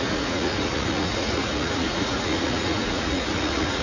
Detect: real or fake fake